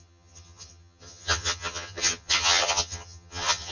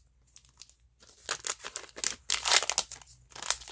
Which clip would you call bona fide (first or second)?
second